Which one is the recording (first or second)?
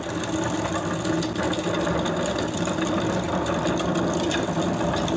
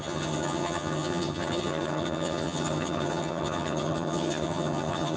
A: first